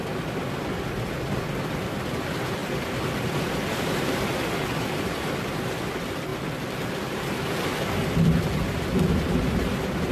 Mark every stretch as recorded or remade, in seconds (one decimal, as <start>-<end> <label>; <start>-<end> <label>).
0.0-10.1 recorded